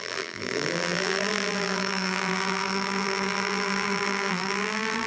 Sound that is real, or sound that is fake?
fake